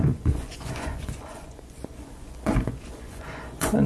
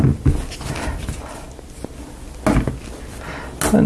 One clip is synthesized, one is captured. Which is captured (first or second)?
second